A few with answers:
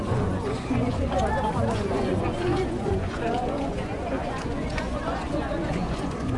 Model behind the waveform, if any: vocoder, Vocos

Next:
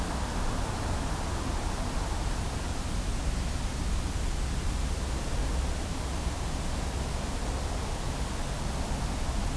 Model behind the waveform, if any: none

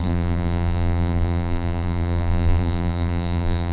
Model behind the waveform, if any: vocoder, BigVGAN v2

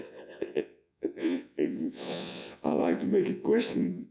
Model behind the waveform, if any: vocoder, Vocos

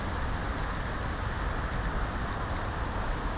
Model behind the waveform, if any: none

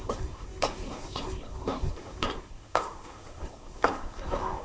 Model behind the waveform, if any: codec, SNAC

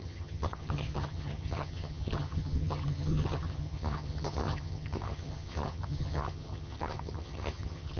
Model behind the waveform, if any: vocoder, HiFi-GAN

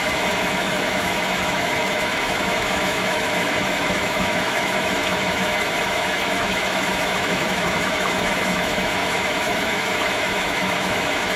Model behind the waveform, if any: autoencoder, DAC-VAE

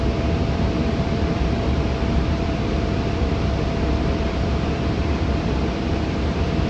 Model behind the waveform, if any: vocoder, BigVGAN v2